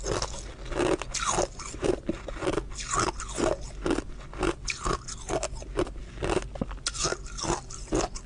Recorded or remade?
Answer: recorded